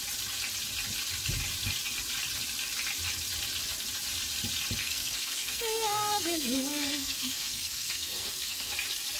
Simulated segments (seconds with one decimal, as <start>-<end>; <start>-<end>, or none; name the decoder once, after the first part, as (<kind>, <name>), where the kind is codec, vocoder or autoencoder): 4.8-8.7 (codec, SNAC)